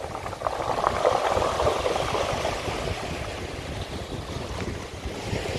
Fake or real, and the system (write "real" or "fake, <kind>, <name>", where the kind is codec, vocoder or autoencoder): real